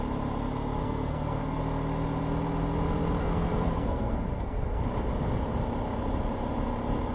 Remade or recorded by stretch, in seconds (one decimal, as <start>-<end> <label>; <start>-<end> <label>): 0.0-0.8 recorded; 0.8-1.6 remade; 1.6-3.2 recorded; 3.2-4.8 remade; 4.8-7.1 recorded